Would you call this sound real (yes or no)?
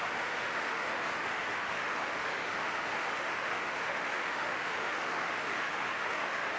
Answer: no